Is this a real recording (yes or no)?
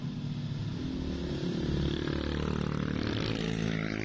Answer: yes